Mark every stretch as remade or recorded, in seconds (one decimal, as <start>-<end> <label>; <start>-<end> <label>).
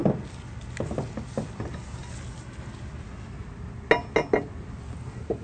0.0-5.4 recorded